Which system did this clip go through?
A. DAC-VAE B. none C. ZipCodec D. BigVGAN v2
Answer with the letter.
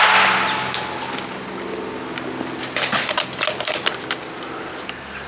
B